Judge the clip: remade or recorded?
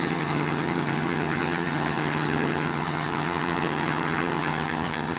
remade